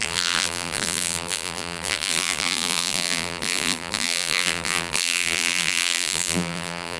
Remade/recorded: remade